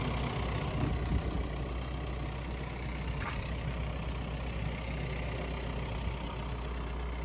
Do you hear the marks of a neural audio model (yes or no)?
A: no